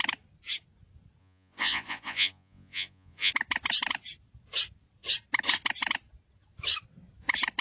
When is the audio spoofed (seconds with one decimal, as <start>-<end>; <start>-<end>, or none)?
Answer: 1.2-3.3